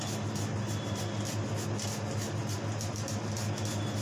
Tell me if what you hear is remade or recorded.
recorded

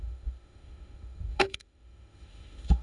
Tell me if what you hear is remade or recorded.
remade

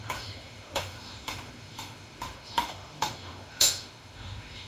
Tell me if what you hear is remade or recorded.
remade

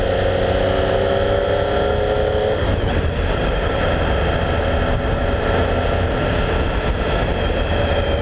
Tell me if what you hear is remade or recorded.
recorded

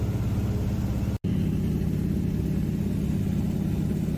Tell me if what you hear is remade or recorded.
recorded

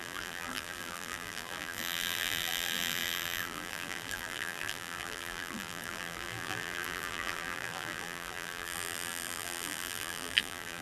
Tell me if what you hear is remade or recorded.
remade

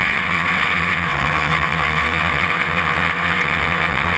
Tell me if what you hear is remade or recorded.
remade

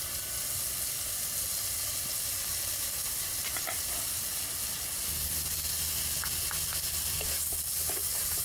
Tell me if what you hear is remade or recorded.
recorded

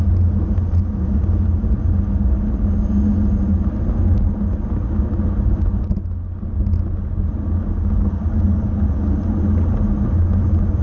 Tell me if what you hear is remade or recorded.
recorded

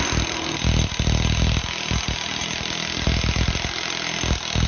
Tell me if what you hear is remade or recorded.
recorded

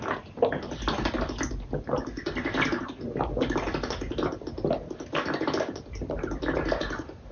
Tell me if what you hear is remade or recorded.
recorded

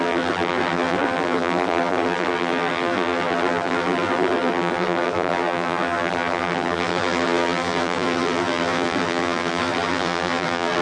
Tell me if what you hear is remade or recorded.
remade